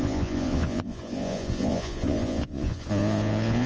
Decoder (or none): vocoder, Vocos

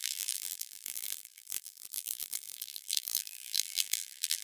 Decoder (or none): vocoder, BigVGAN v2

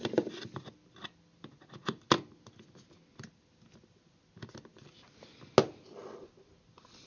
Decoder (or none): none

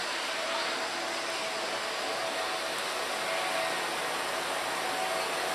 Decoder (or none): none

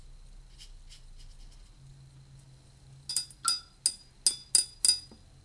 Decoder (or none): none